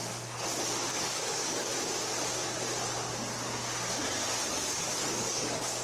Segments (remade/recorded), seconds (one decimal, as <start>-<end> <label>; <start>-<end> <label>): 0.0-0.9 recorded; 0.9-1.7 remade; 1.7-4.5 recorded; 4.5-5.8 remade